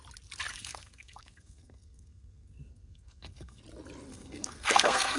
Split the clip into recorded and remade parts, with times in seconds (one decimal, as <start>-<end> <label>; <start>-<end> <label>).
0.0-0.5 recorded; 0.5-3.6 remade; 3.6-4.1 recorded; 4.1-5.2 remade